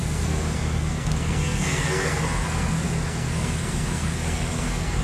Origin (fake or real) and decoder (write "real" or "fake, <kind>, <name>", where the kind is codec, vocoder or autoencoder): fake, codec, SNAC